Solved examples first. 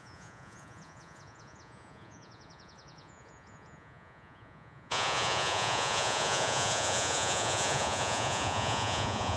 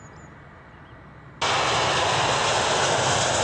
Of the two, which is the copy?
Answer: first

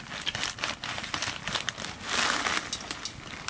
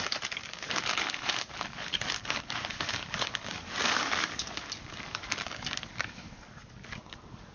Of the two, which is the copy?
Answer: second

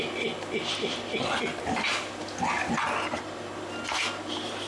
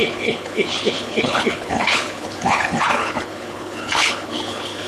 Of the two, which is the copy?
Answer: second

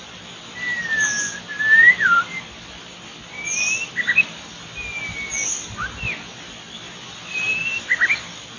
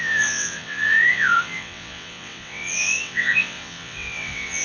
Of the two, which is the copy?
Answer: second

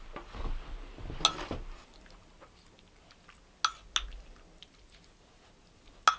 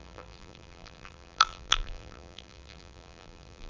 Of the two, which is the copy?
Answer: second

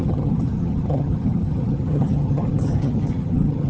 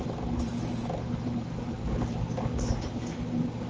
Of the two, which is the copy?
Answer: first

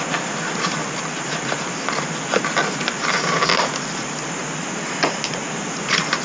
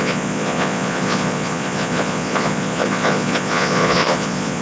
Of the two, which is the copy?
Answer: second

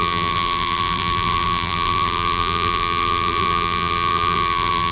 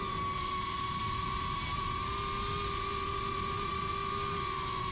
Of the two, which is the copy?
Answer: first